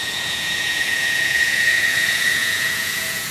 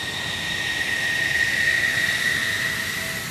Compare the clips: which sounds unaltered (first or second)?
second